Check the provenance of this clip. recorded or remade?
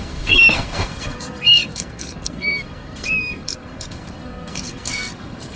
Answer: remade